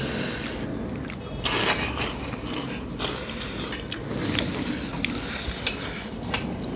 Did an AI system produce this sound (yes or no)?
no